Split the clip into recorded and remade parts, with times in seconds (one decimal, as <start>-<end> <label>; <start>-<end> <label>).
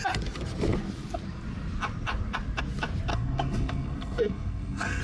0.0-3.1 recorded; 3.1-5.0 remade